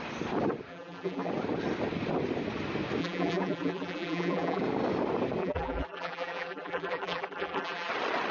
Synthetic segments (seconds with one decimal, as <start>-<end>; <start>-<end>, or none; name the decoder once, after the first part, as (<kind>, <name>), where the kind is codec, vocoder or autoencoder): 0.7-1.3 (vocoder, BigVGAN v2); 3.0-4.6; 5.4-7.9